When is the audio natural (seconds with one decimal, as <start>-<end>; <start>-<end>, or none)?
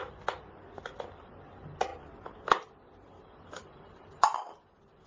0.0-5.1